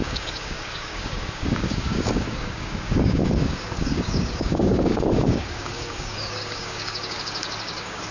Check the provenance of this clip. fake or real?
fake